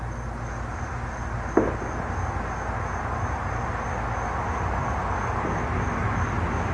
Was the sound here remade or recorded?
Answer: recorded